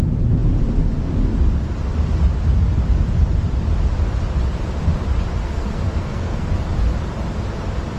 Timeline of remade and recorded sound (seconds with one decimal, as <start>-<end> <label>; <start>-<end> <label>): 0.0-5.4 recorded; 5.4-6.5 remade; 6.5-8.0 recorded